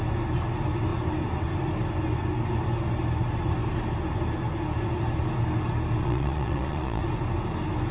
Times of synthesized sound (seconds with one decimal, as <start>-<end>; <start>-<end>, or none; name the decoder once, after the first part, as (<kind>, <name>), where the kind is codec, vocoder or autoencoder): 6.0-7.0 (vocoder, Vocos)